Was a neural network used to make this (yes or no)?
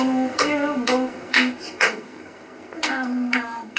yes